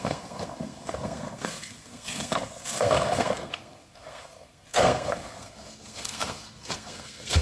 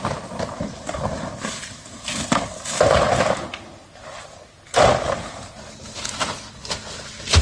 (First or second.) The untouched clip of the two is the second